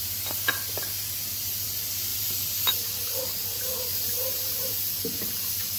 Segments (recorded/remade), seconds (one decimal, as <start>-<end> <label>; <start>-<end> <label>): 0.0-2.1 recorded; 2.1-3.2 remade; 3.2-3.7 recorded; 3.7-4.8 remade; 4.8-5.8 recorded